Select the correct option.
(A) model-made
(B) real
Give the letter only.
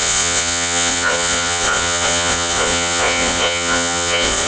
A